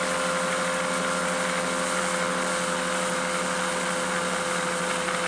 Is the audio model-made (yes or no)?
no